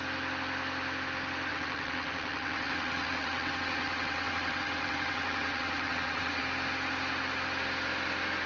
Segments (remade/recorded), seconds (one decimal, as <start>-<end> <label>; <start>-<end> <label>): 0.0-1.5 recorded; 1.5-6.4 remade; 6.4-8.5 recorded